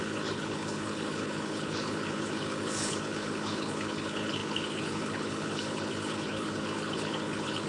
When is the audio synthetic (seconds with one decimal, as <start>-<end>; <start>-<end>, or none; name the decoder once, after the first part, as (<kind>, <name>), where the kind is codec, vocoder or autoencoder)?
0.0-7.7 (codec, HILCodec)